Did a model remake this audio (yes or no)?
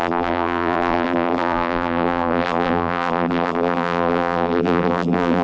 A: yes